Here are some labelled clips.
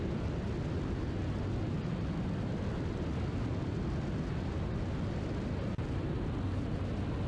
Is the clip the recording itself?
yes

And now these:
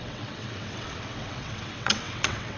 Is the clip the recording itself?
no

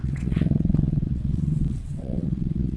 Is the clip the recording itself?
no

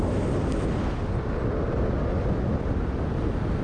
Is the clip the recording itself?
yes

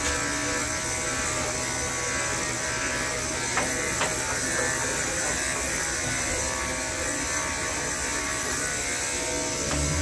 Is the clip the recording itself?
yes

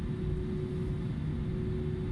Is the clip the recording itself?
yes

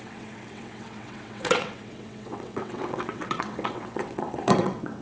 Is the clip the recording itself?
no